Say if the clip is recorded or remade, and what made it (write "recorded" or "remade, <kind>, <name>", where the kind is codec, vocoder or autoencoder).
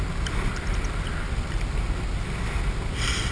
remade, vocoder, BigVGAN v2